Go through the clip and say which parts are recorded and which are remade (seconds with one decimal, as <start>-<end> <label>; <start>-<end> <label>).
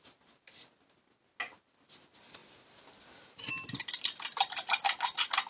0.0-5.5 recorded